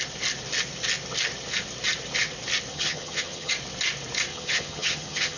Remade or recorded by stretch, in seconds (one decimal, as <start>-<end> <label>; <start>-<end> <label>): 0.0-2.7 recorded; 2.7-3.5 remade; 3.5-4.3 recorded; 4.3-5.4 remade